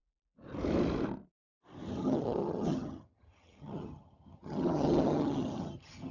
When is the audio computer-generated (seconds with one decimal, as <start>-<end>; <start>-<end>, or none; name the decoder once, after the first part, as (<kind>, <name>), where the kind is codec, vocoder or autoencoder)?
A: 2.0-6.1 (vocoder, HiFi-GAN)